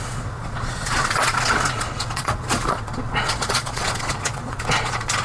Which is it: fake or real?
fake